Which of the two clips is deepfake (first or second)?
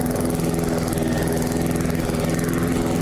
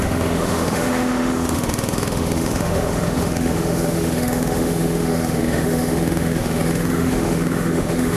second